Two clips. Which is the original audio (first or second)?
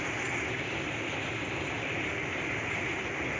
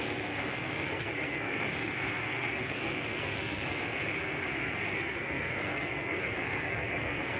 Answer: first